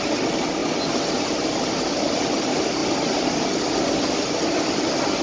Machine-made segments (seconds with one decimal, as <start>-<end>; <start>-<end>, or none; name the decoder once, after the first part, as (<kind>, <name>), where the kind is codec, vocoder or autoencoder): none